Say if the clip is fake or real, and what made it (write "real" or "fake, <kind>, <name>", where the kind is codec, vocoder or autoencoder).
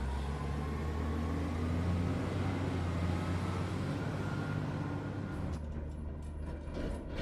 real